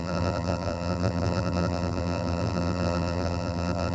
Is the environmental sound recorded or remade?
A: remade